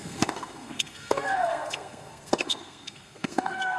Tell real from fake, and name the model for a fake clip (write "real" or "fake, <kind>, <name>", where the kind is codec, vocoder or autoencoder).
fake, codec, SNAC